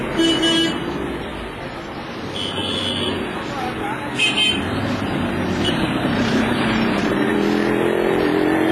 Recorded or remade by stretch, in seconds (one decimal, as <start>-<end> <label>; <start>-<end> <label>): 0.0-8.7 recorded